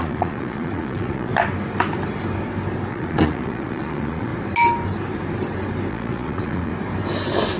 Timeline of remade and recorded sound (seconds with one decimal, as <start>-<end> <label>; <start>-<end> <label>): 0.0-1.3 remade; 1.3-2.9 recorded; 2.9-4.3 remade; 4.3-5.9 recorded; 5.9-6.7 remade; 6.7-7.6 recorded